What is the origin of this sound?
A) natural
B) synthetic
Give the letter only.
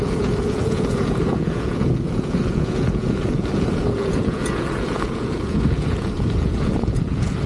B